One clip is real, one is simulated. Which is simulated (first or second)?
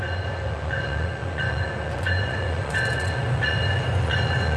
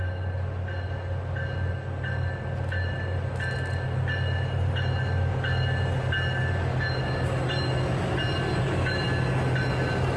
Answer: first